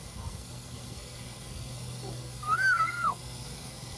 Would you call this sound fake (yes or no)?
yes